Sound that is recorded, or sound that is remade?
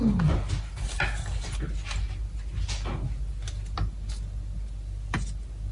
recorded